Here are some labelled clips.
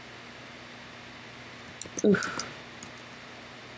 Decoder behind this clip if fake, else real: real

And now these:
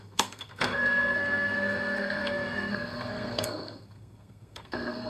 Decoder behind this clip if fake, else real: fake, codec, SNAC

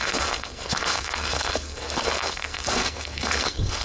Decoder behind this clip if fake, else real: fake, codec, SNAC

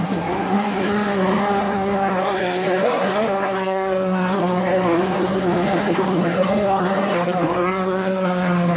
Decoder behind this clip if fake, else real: fake, codec, SNAC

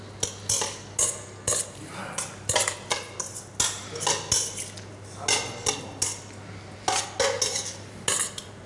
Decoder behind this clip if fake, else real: real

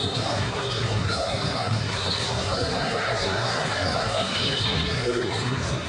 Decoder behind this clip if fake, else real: fake, codec, SNAC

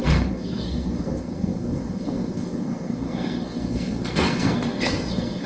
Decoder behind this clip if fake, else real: fake, codec, SNAC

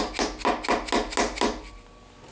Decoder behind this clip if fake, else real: real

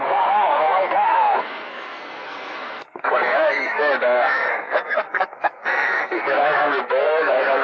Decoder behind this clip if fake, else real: fake, codec, SNAC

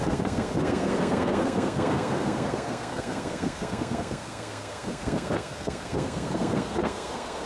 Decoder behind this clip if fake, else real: fake, codec, SNAC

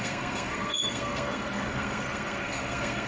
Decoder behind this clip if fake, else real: fake, codec, SNAC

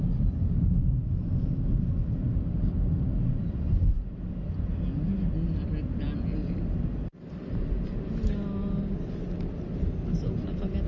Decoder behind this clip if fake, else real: real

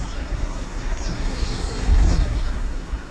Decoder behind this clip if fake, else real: fake, codec, SNAC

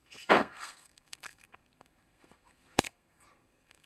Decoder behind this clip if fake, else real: fake, codec, SNAC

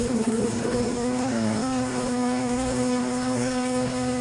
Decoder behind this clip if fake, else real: fake, codec, SNAC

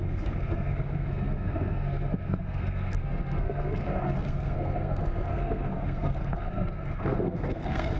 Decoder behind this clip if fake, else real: fake, codec, SNAC